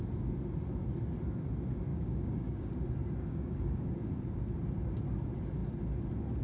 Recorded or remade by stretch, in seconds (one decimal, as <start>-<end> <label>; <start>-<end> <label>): 0.0-1.9 recorded; 1.9-2.8 remade; 2.8-3.2 recorded; 3.2-4.2 remade; 4.2-6.4 recorded